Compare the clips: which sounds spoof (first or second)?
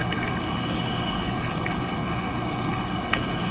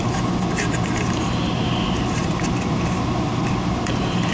first